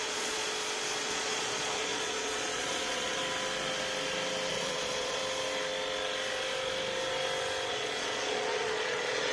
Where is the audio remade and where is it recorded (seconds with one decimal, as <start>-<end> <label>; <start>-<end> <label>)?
0.0-0.4 remade; 0.4-1.0 recorded; 1.0-3.2 remade; 3.2-4.5 recorded; 4.5-5.2 remade; 5.2-7.7 recorded; 7.7-9.3 remade